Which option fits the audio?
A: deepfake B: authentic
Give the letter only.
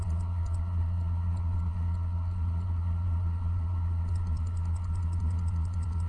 A